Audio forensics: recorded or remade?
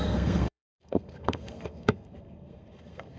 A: remade